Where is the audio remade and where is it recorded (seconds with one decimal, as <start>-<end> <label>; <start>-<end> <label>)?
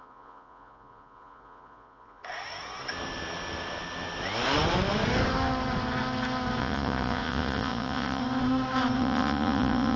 0.0-2.2 remade; 2.2-6.6 recorded; 6.6-8.2 remade; 8.2-9.0 recorded; 9.0-10.0 remade